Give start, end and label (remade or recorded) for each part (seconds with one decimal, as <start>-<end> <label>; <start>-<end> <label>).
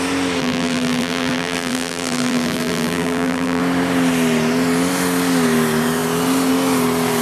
0.0-0.4 recorded; 0.4-3.6 remade; 3.6-7.2 recorded